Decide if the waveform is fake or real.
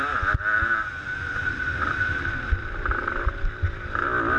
fake